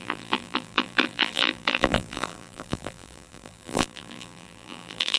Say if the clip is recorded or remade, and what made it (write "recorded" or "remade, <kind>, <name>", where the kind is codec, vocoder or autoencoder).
remade, vocoder, BigVGAN v2